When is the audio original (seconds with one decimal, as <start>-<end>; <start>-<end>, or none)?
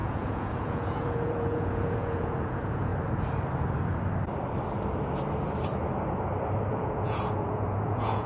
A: 2.9-6.7